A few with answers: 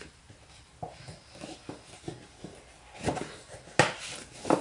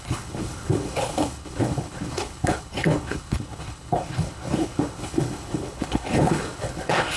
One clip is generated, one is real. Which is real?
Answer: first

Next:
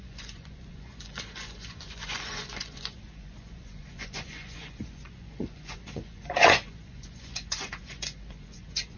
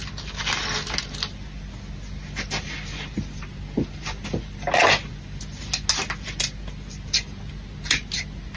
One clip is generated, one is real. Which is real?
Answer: second